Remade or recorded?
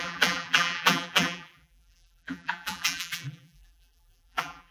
remade